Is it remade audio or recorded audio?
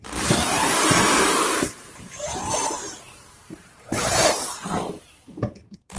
remade